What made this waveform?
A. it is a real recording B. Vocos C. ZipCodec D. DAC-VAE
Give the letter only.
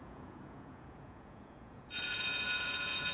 B